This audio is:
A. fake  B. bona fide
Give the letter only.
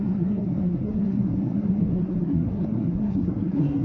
A